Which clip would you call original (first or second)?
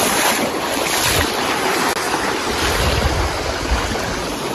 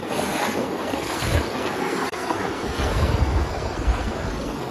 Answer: first